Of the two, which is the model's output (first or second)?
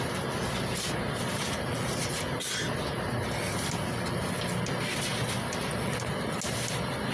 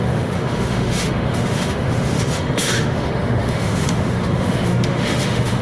second